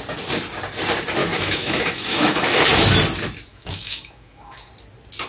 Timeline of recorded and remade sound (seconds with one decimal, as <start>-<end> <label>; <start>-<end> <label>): 0.0-1.2 recorded; 1.2-2.6 remade; 2.6-3.5 recorded; 3.5-4.7 remade; 4.7-5.3 recorded